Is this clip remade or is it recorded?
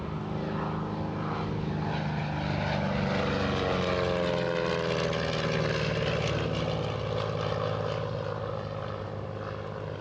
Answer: recorded